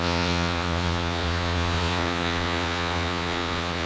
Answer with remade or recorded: remade